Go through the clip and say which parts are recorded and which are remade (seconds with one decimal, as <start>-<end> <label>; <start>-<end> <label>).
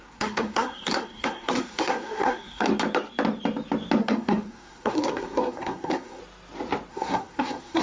0.0-2.7 remade; 2.7-4.0 recorded; 4.0-6.2 remade; 6.2-6.9 recorded; 6.9-7.8 remade